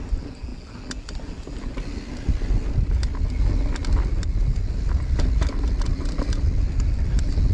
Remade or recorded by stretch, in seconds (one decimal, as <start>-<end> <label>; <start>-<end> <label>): 0.0-7.5 recorded